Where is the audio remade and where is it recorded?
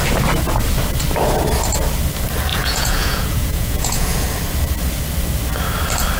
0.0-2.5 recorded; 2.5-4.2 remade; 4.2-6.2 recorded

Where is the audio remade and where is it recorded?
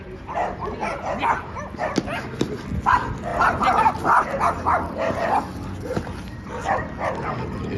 0.0-3.3 recorded; 3.3-3.9 remade; 3.9-7.8 recorded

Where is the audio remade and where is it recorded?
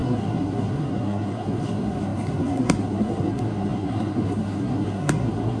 0.0-5.6 remade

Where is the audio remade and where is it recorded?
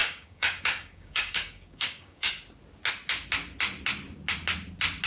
0.0-2.3 remade; 2.3-5.1 recorded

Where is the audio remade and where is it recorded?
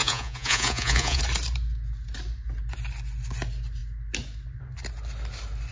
0.0-1.2 remade; 1.2-5.7 recorded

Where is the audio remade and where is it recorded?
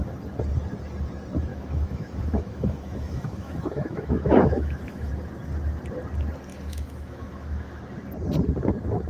0.0-1.5 recorded; 1.5-5.1 remade; 5.1-6.5 recorded; 6.5-7.8 remade; 7.8-9.1 recorded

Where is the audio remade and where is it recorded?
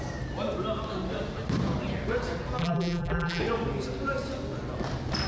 0.0-2.6 recorded; 2.6-3.4 remade; 3.4-5.3 recorded